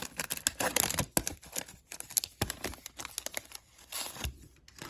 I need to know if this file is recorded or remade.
recorded